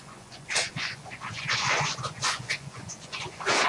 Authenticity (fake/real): fake